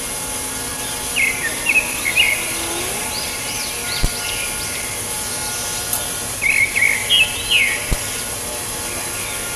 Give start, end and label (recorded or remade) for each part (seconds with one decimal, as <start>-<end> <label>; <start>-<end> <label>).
0.0-0.7 recorded; 0.7-1.3 remade; 1.3-9.6 recorded